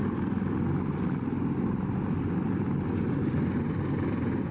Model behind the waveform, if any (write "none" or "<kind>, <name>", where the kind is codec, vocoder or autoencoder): none